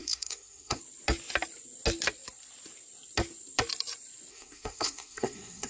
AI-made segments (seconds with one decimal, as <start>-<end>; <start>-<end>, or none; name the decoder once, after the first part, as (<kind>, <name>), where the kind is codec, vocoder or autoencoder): 0.0-0.8 (codec, SNAC); 4.3-5.7